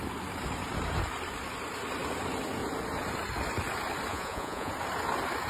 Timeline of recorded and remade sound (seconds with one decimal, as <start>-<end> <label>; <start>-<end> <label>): 0.0-4.1 recorded; 4.1-4.7 remade; 4.7-5.5 recorded